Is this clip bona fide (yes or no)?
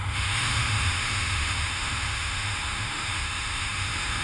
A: no